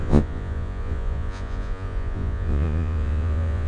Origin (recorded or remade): remade